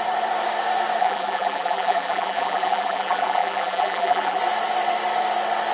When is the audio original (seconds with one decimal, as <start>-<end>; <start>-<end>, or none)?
0.0-1.0; 4.4-5.7